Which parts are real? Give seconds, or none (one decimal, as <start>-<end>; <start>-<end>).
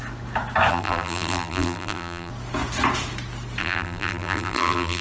0.0-0.7; 2.3-3.6